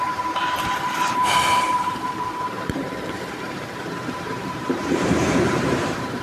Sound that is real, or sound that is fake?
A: fake